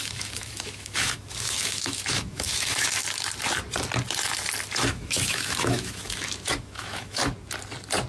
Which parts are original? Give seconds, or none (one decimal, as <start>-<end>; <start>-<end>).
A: 3.0-4.9; 7.2-8.1